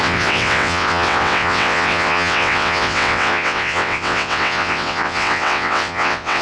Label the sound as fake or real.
fake